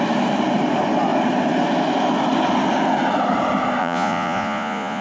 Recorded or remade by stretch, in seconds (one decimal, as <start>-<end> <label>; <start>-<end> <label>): 0.0-3.8 recorded; 3.8-5.0 remade